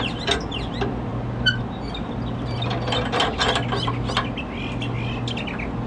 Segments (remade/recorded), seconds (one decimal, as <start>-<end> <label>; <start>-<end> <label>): 0.0-5.9 recorded